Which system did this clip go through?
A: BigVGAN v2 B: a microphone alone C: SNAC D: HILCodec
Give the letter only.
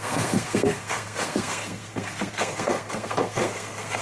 C